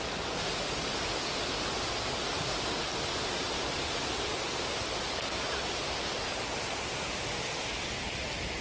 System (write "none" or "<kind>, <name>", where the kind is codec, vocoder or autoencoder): none